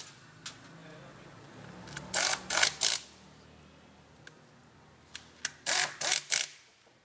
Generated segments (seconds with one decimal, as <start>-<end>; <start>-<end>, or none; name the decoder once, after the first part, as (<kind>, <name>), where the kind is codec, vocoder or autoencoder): none